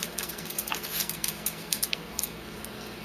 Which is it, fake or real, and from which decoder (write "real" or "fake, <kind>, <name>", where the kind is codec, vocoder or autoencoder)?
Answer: fake, codec, SNAC